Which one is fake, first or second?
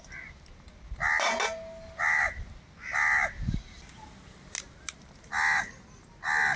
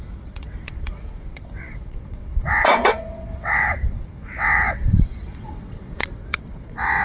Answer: second